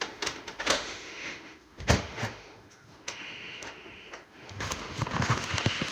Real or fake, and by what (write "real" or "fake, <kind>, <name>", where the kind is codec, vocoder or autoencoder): fake, autoencoder, DAC-VAE